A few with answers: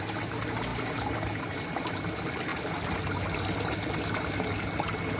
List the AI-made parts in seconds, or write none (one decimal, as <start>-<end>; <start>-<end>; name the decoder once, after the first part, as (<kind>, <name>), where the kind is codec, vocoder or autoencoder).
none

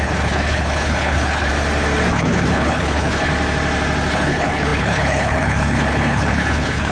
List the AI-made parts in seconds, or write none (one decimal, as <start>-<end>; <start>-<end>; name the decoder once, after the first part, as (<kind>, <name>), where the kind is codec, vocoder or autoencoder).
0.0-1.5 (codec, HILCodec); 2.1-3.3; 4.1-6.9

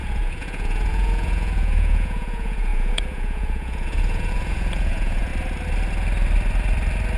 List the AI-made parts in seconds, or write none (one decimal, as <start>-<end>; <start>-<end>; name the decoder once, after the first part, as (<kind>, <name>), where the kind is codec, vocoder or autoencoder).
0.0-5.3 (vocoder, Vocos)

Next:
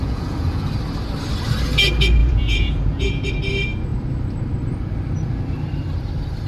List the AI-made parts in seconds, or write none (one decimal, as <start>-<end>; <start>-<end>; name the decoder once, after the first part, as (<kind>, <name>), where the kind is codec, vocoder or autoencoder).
0.0-0.7 (vocoder, Vocos); 2.2-3.3